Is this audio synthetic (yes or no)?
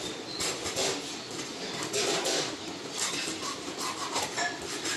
yes